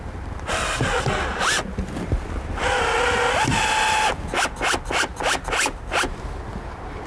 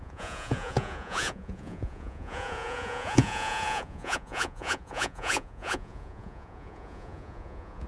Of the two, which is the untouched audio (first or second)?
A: first